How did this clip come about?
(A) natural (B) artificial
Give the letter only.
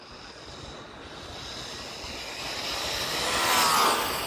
A